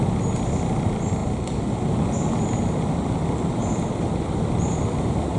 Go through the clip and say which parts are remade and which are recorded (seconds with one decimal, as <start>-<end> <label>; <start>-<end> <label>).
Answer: 0.0-5.4 recorded